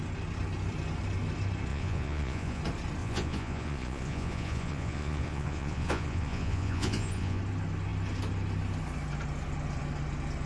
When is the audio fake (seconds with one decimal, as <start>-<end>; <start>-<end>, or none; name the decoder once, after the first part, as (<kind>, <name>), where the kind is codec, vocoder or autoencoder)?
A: 1.7-2.6 (vocoder, Vocos); 3.0-7.4